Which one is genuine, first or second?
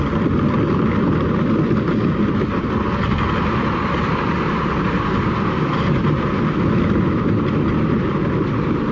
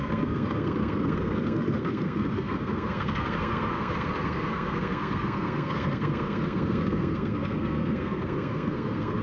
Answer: first